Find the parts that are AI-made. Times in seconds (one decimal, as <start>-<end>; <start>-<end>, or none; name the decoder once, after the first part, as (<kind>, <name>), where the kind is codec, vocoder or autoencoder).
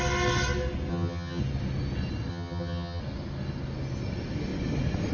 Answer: 0.9-1.4 (vocoder, HiFi-GAN); 2.3-3.0